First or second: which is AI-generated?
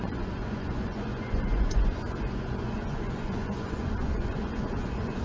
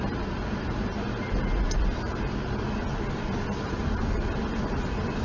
first